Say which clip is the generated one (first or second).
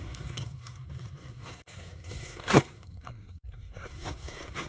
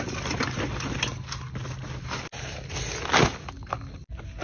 first